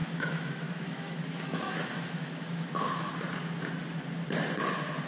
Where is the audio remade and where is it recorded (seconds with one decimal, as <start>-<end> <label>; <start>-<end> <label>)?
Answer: 0.0-3.1 remade; 3.1-5.1 recorded